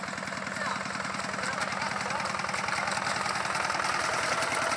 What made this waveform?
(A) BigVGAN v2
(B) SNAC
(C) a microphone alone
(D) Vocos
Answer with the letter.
C